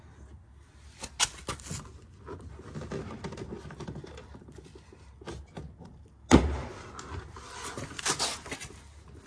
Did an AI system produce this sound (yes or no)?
no